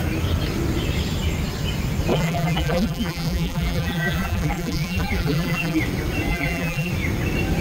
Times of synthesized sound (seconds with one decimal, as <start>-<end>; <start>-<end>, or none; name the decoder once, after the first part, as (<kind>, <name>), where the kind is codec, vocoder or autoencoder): 2.1-5.8 (vocoder, BigVGAN v2); 6.3-6.9